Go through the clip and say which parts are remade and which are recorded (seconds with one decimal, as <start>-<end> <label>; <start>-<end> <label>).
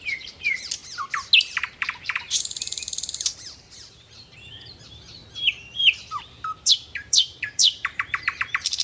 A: 0.0-0.8 remade; 0.8-1.5 recorded; 1.5-5.2 remade; 5.2-5.8 recorded; 5.8-8.8 remade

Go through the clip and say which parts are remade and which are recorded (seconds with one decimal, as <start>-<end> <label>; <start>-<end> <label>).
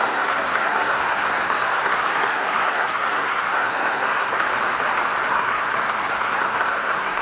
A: 0.0-4.5 remade; 4.5-5.3 recorded; 5.3-7.2 remade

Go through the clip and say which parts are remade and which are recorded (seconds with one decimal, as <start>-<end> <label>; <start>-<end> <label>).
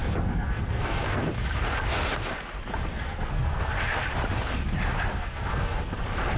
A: 0.0-1.2 remade; 1.2-2.9 recorded; 2.9-3.7 remade; 3.7-5.1 recorded; 5.1-5.9 remade; 5.9-6.4 recorded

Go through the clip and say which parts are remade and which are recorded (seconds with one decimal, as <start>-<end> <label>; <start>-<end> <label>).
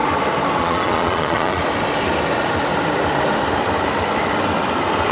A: 0.0-0.6 recorded; 0.6-1.6 remade; 1.6-5.1 recorded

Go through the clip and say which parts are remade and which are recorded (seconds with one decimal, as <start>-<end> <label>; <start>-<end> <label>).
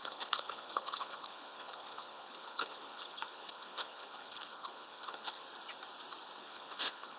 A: 0.0-5.4 remade; 5.4-6.4 recorded; 6.4-7.2 remade